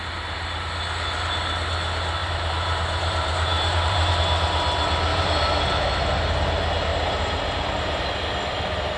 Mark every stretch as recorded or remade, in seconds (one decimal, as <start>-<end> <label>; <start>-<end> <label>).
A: 0.0-2.2 recorded; 2.2-4.1 remade; 4.1-5.1 recorded; 5.1-5.6 remade; 5.6-6.9 recorded; 6.9-8.1 remade; 8.1-9.0 recorded